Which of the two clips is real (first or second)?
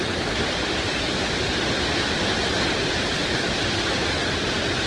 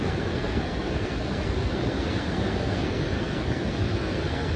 first